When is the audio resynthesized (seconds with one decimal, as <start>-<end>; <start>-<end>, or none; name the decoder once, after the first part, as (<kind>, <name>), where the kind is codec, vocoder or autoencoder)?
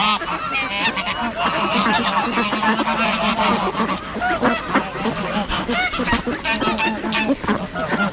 none